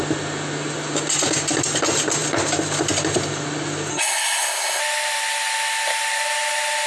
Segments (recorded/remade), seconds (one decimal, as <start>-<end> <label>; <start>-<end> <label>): 0.0-3.9 recorded; 3.9-4.8 remade; 4.8-6.9 recorded